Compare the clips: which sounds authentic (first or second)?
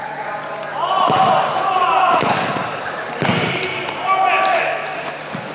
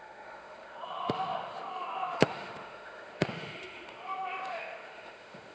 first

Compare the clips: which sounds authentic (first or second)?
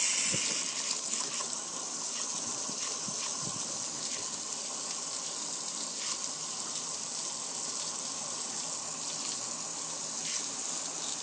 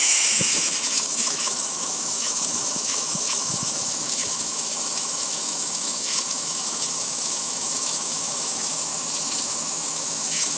first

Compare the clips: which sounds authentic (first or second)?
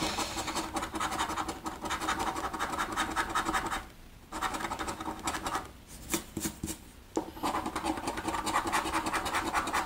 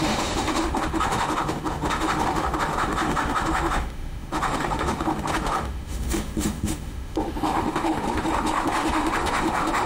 first